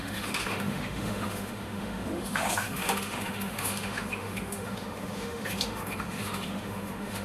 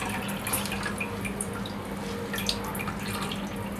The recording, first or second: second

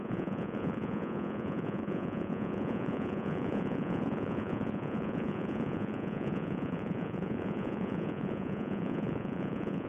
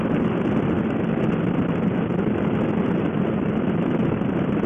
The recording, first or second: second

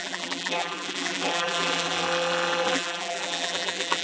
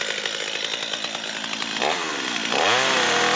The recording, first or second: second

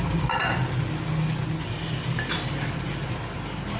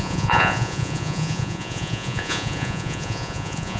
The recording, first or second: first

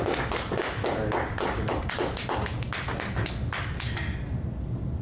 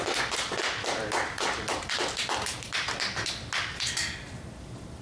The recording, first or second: first